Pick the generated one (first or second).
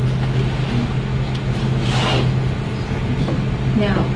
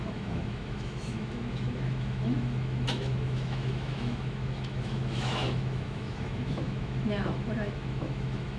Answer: second